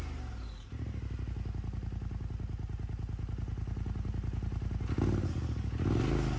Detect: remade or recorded recorded